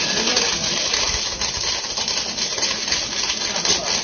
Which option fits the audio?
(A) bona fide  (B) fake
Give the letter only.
A